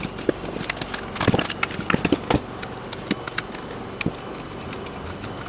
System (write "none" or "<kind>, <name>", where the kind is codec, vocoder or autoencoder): none